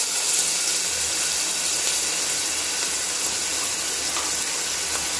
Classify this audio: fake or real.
real